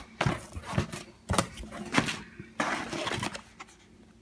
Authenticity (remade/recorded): recorded